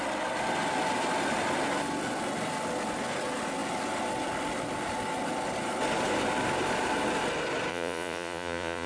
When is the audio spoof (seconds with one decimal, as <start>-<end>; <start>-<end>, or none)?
7.7-8.9